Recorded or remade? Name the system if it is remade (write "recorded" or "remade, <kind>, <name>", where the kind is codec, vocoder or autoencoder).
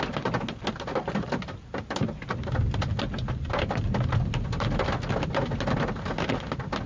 recorded